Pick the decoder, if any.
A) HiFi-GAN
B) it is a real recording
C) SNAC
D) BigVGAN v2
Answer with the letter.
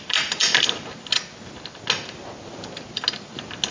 B